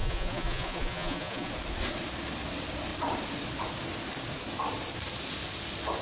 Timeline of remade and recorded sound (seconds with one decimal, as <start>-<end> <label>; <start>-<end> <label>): 0.0-1.5 remade; 1.5-6.0 recorded